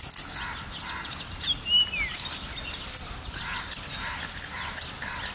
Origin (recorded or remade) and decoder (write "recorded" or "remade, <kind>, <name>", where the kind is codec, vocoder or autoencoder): recorded